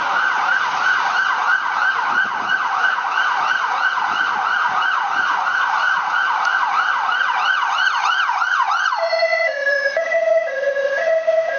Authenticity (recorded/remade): remade